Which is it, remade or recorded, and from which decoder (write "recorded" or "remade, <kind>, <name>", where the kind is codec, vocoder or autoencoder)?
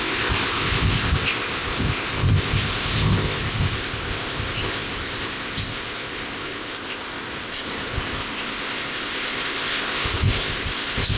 remade, codec, ZipCodec